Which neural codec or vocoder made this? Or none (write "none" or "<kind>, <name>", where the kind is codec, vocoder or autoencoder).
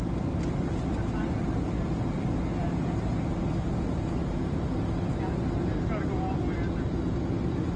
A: none